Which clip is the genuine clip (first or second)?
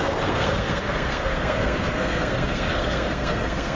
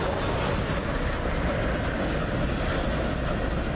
second